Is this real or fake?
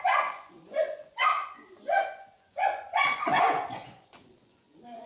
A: fake